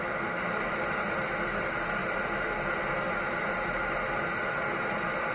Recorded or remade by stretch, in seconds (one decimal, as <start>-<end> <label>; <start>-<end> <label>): 0.0-5.3 recorded